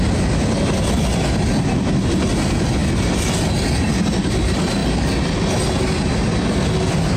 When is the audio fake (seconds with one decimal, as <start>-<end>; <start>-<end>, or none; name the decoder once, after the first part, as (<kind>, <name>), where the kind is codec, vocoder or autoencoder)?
none